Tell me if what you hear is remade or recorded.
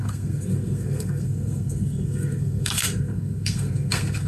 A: remade